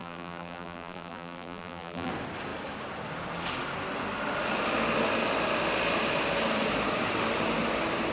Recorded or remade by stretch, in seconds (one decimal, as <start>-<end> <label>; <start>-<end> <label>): 0.0-2.1 remade; 2.1-8.1 recorded